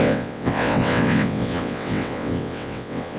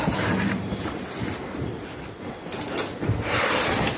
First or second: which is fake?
first